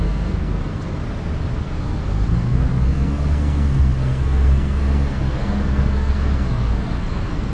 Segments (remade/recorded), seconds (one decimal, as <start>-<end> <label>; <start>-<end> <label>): 0.0-1.0 remade; 1.0-1.6 recorded; 1.6-7.5 remade